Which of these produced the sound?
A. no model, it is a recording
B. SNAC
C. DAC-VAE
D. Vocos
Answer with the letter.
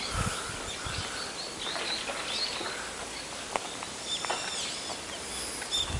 A